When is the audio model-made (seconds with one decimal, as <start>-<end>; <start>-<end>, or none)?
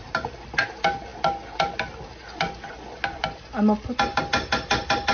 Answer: none